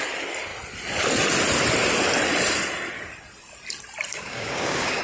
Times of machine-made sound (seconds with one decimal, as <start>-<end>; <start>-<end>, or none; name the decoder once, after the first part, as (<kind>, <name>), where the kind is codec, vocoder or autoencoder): 4.1-5.0 (codec, DAC)